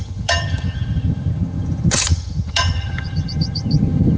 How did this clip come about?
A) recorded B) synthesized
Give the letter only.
B